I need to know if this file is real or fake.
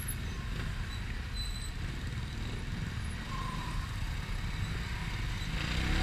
real